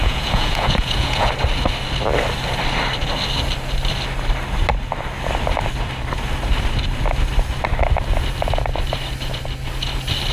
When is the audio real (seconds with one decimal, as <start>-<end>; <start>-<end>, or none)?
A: 1.3-10.3